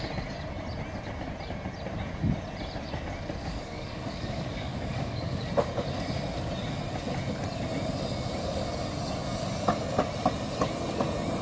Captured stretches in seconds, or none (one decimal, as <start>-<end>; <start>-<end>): 0.0-3.4; 5.5-11.4